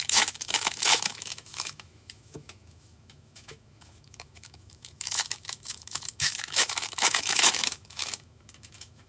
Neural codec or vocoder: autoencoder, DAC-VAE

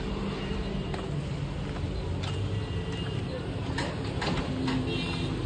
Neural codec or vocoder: none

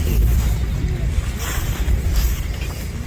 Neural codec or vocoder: none